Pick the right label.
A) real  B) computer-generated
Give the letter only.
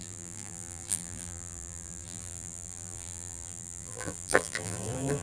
B